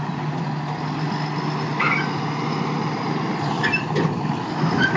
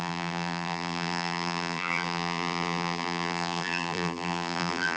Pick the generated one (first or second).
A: second